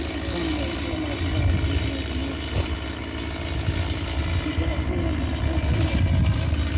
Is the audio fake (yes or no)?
no